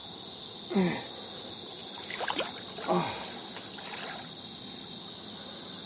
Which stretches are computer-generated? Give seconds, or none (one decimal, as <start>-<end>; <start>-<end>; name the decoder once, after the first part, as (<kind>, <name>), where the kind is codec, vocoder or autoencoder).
none